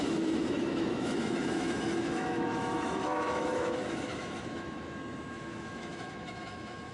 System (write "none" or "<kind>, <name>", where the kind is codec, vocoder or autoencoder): autoencoder, DAC-VAE